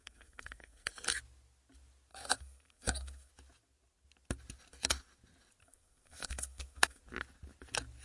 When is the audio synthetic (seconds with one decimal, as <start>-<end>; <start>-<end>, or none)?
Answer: 0.0-0.9; 2.1-3.3; 5.6-7.0